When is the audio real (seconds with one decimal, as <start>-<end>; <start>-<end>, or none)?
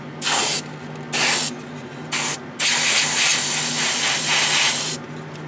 0.0-5.5